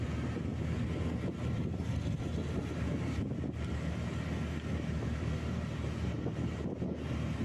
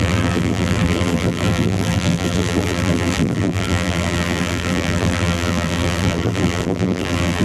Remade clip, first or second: second